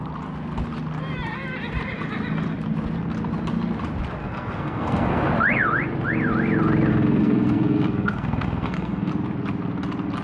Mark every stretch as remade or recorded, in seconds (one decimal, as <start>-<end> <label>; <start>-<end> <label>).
0.0-4.2 recorded; 4.2-5.3 remade; 5.3-6.9 recorded; 6.9-9.1 remade; 9.1-10.2 recorded